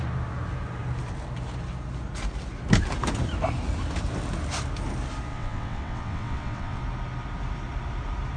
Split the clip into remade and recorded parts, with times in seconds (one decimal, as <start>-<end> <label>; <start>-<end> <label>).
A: 0.0-5.3 recorded; 5.3-6.8 remade; 6.8-8.4 recorded